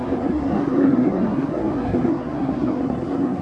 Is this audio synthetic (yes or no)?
yes